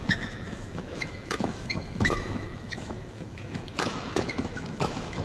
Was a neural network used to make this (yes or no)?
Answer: yes